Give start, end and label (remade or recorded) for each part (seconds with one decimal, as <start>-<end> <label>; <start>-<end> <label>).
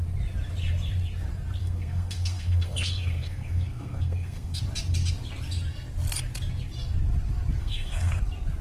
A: 0.0-1.6 recorded; 1.6-4.6 remade; 4.6-7.6 recorded; 7.6-8.2 remade; 8.2-8.6 recorded